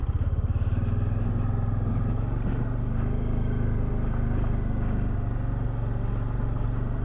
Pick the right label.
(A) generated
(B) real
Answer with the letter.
B